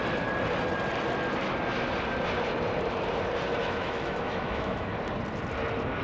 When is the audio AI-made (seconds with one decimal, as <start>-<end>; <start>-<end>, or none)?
3.6-4.9